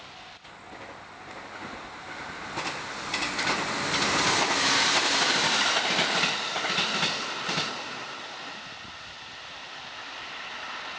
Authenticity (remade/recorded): recorded